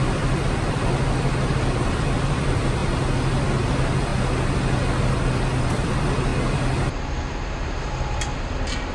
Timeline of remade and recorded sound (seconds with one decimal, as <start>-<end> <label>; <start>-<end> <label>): 0.0-2.8 remade; 2.8-3.4 recorded; 3.4-4.1 remade; 4.1-5.0 recorded; 5.0-6.3 remade; 6.3-7.4 recorded; 7.4-8.9 remade